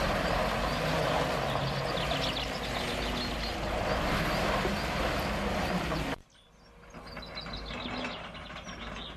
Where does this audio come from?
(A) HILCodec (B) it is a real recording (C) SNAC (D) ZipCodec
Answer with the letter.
B